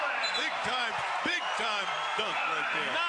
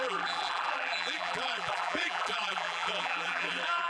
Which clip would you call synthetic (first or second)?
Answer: second